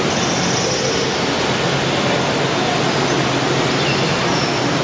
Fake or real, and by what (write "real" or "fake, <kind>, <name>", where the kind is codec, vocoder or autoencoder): real